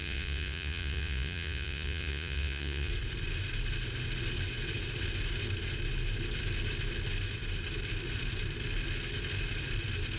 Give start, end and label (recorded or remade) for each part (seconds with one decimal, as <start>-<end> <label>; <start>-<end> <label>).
0.0-2.9 remade; 2.9-10.2 recorded